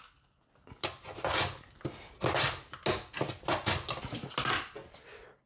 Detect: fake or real real